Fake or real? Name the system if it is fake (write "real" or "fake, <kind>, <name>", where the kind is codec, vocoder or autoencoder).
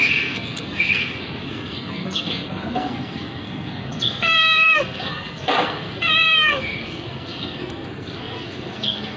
fake, codec, SNAC